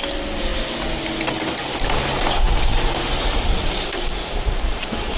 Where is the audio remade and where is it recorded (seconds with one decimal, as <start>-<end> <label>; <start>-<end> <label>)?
0.0-1.6 recorded; 1.6-2.2 remade; 2.2-2.7 recorded; 2.7-5.2 remade

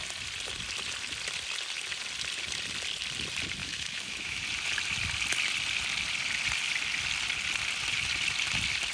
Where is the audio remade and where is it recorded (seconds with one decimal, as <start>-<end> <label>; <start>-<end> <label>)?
0.0-3.6 recorded; 3.6-4.4 remade; 4.4-8.9 recorded